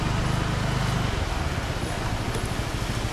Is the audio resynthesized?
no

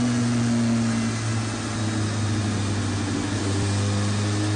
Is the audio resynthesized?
no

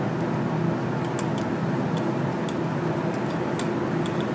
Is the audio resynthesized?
no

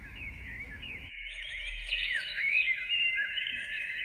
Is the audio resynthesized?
yes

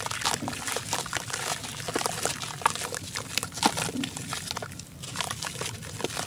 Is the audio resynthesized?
no